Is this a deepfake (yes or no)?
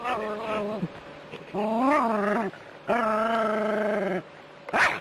no